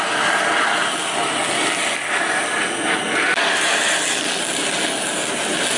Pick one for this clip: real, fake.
real